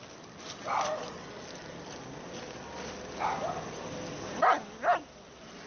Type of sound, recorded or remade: recorded